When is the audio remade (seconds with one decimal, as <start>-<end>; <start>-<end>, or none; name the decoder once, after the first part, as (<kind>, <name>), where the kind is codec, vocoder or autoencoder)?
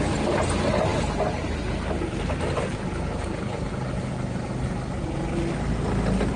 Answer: none